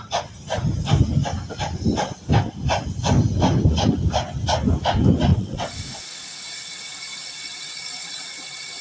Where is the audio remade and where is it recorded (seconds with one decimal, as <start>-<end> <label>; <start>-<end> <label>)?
0.0-5.3 recorded; 5.3-8.8 remade